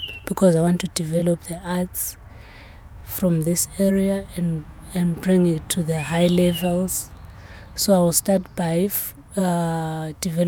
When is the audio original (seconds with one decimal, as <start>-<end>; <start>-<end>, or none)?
1.2-2.3; 8.4-9.4